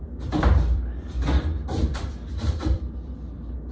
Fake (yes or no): yes